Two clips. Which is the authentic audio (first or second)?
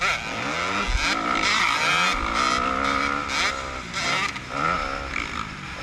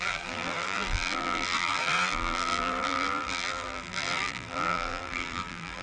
first